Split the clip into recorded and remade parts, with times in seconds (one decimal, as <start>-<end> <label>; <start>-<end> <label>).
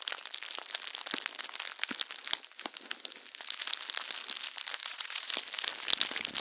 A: 0.0-4.8 recorded; 4.8-5.3 remade; 5.3-6.4 recorded